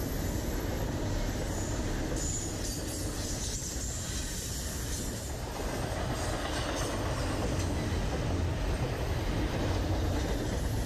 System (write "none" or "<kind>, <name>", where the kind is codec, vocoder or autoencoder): none